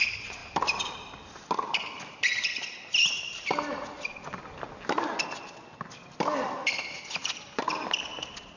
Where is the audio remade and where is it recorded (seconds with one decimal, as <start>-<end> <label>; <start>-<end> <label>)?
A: 0.0-8.6 recorded